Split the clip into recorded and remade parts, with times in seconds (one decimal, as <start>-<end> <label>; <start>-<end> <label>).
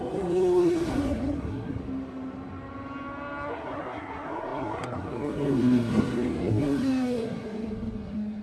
0.0-1.8 remade; 1.8-3.5 recorded; 3.5-8.4 remade